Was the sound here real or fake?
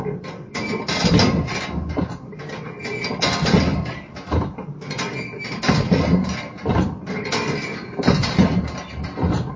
real